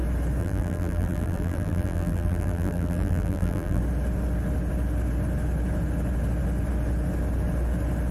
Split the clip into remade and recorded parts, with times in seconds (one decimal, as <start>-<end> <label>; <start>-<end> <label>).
0.0-0.4 recorded; 0.4-3.8 remade; 3.8-8.1 recorded